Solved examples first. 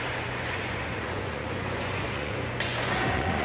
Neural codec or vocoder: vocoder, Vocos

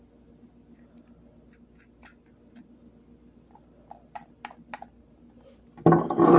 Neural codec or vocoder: none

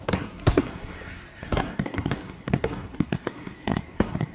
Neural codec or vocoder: codec, SNAC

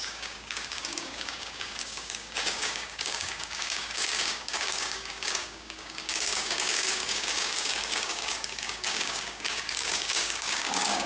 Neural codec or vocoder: codec, DAC